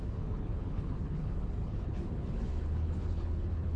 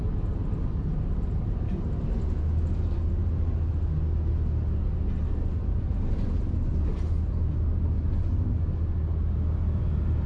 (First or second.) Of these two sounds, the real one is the second